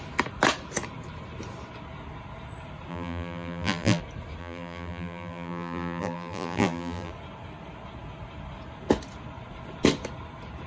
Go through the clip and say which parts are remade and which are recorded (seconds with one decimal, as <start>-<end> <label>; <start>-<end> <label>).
0.0-2.9 recorded; 2.9-4.0 remade; 4.0-4.4 recorded; 4.4-7.1 remade; 7.1-10.7 recorded